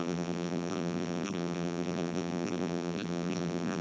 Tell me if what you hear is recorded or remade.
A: remade